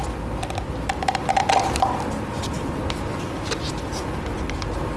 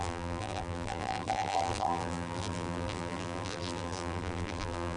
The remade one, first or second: second